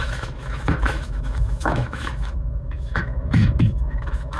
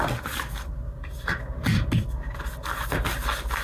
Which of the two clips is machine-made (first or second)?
first